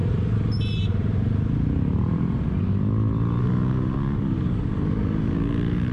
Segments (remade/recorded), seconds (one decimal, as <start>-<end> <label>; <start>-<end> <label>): 0.0-3.4 recorded; 3.4-5.9 remade